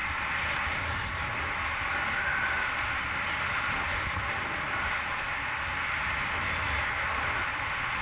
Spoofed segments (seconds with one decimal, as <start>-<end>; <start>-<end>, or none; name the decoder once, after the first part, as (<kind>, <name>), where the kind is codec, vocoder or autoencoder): none